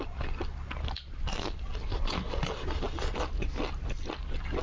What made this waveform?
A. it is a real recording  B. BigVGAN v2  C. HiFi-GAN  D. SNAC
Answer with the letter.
A